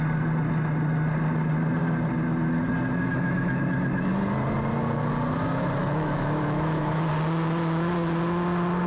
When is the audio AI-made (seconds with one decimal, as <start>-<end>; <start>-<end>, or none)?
3.1-3.6; 5.8-7.1